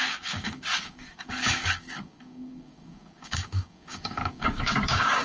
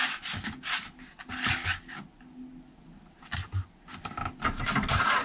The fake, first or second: first